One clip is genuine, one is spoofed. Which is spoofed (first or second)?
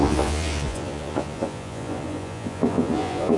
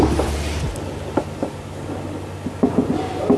first